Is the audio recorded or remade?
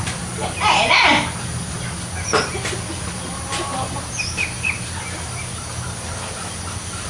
recorded